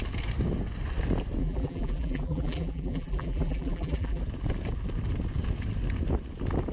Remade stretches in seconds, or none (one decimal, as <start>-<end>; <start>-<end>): 1.4-4.2